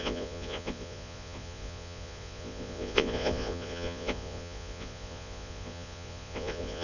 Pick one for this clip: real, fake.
fake